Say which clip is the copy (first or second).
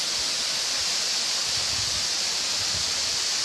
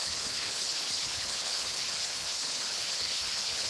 second